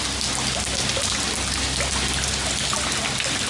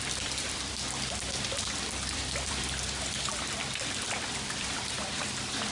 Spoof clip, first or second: second